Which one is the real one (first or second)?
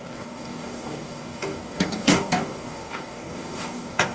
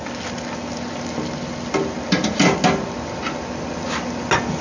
second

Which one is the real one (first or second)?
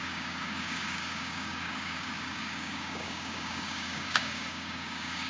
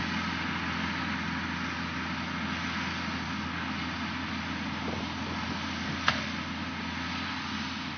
second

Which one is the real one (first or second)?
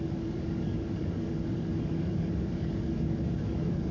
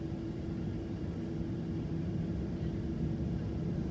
second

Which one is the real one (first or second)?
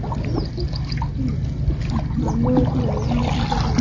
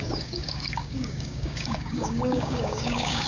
first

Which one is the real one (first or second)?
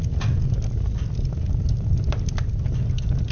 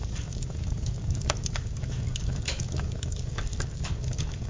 first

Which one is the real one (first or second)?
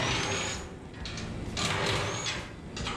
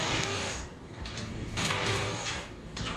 first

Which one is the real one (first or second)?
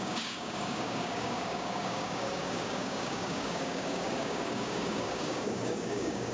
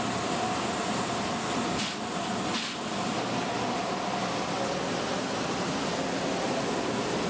second